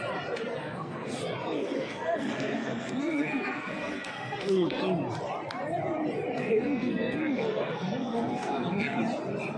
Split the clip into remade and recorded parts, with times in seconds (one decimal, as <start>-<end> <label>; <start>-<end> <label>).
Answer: 0.0-0.6 recorded; 0.6-1.2 remade; 1.2-1.6 recorded; 1.6-4.8 remade; 4.8-6.4 recorded; 6.4-9.0 remade; 9.0-9.6 recorded